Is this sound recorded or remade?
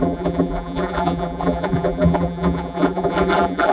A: remade